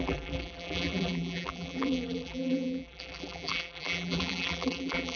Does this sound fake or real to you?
fake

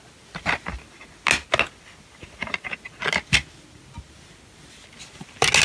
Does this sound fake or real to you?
real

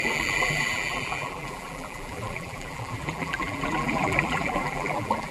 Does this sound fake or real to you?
fake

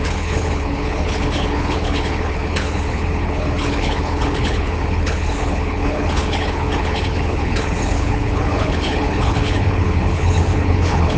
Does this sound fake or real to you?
fake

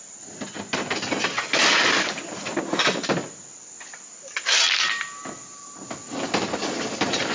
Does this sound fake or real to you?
real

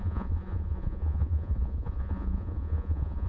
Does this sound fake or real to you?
fake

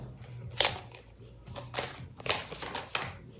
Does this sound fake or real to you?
real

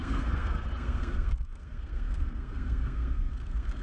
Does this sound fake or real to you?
fake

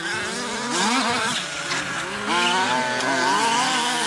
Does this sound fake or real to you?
real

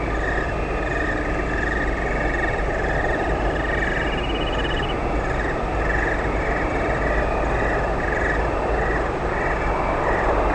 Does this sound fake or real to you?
real